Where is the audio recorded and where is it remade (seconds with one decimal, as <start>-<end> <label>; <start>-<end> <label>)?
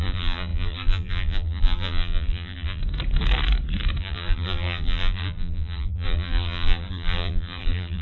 0.0-2.8 remade; 2.8-4.0 recorded; 4.0-8.0 remade